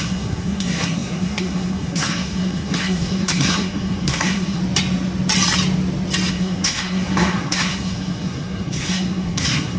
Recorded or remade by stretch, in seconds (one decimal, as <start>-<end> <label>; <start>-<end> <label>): 0.0-4.6 remade; 4.6-6.3 recorded; 6.3-9.8 remade